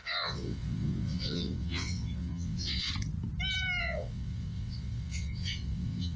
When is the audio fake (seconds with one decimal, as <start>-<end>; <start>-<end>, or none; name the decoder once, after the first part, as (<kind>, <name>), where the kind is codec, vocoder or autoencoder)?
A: 0.0-2.9 (vocoder, WaveNeXt); 3.8-6.2